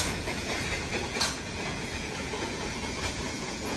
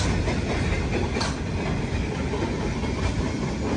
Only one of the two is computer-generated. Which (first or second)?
first